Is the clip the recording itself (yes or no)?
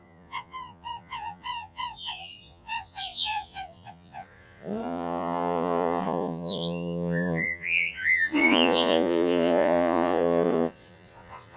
no